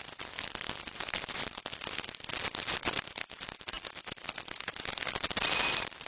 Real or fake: real